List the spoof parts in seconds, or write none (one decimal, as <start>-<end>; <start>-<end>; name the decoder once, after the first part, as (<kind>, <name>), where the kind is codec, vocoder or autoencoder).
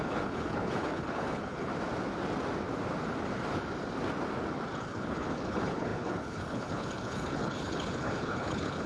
0.0-1.7 (codec, HILCodec); 4.8-8.9